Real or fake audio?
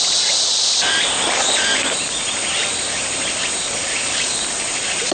real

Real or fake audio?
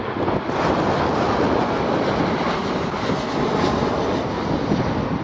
real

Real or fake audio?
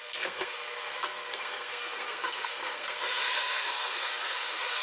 fake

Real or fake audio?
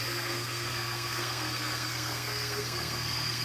fake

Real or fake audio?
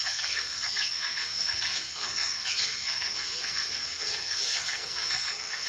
fake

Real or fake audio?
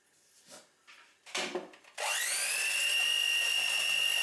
real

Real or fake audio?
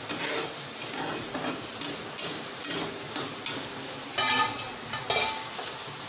real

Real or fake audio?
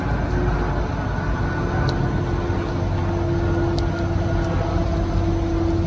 real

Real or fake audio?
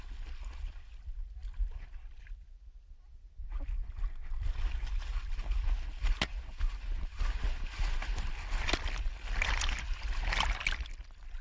real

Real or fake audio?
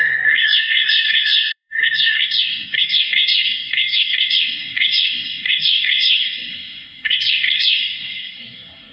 fake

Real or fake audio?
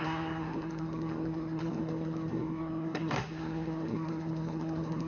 fake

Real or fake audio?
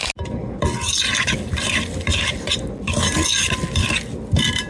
real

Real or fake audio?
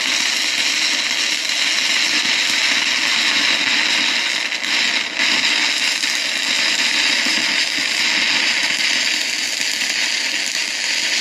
real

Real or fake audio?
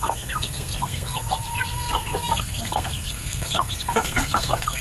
fake